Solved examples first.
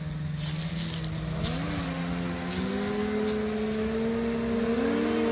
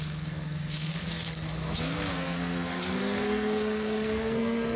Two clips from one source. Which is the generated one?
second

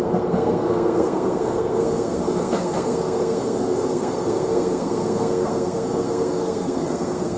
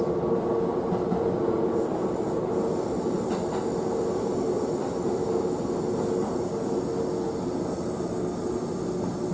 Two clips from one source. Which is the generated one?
first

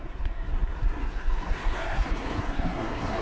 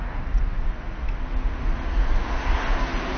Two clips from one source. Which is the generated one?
first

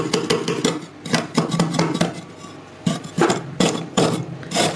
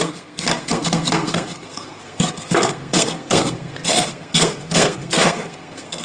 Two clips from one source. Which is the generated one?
second